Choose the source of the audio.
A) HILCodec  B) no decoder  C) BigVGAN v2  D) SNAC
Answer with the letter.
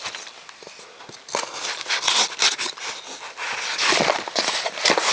B